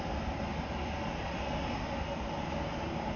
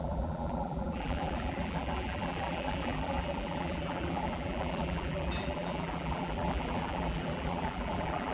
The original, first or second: first